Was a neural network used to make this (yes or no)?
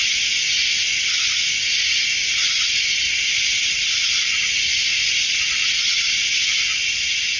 no